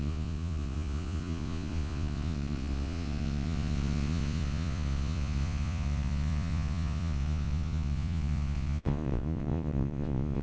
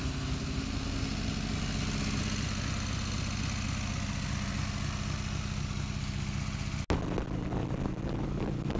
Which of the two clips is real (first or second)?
second